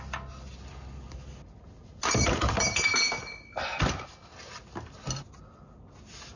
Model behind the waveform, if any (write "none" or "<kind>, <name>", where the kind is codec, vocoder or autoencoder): none